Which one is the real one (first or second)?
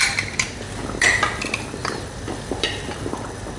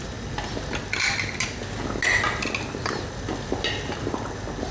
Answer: second